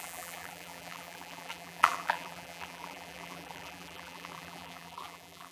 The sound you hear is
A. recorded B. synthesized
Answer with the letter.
B